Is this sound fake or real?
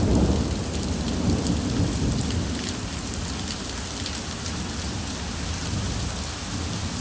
real